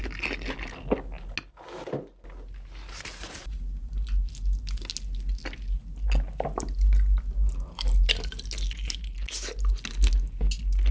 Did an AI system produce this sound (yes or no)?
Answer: no